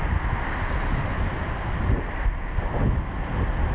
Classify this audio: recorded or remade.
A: recorded